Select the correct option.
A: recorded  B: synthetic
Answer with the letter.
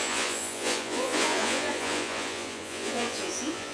B